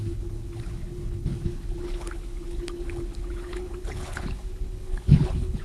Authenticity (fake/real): fake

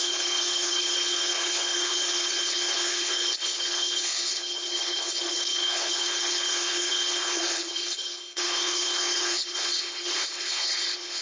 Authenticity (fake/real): fake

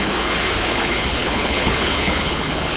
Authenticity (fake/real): fake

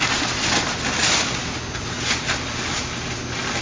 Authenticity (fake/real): real